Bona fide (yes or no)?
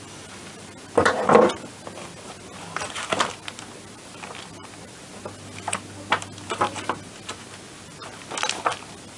yes